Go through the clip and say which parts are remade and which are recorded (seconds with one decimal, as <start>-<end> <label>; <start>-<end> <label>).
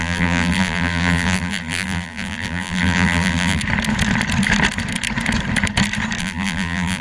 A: 0.0-3.6 remade; 3.6-6.2 recorded; 6.2-7.0 remade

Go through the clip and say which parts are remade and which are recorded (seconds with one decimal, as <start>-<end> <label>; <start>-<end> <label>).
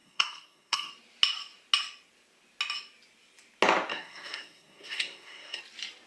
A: 0.0-0.9 remade; 0.9-3.9 recorded; 3.9-5.6 remade; 5.6-6.1 recorded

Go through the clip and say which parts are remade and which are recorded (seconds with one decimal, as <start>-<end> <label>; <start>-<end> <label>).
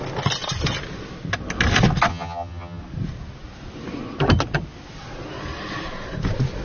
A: 0.0-2.1 recorded; 2.1-2.8 remade; 2.8-6.6 recorded